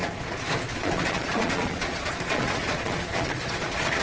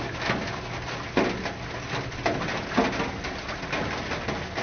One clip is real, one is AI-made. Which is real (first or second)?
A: second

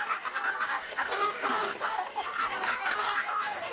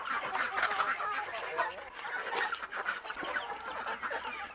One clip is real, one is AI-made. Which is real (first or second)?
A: second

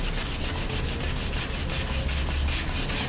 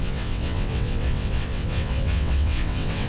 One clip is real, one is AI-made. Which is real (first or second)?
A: first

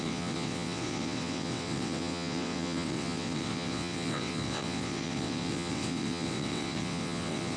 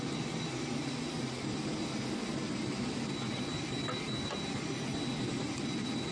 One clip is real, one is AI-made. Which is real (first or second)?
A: second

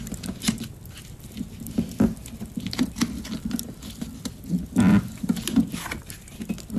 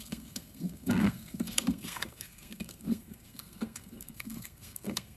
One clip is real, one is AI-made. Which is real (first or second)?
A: first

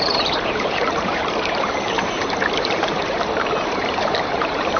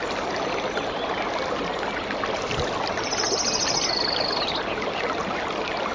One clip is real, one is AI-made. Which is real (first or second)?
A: second